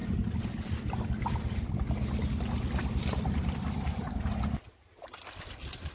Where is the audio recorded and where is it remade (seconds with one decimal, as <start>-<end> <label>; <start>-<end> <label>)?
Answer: 0.0-5.9 recorded